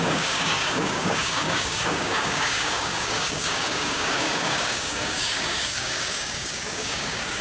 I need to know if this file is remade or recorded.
remade